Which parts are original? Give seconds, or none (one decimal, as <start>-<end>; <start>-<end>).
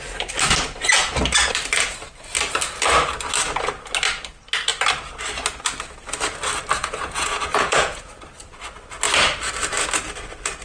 0.0-6.8; 8.1-10.6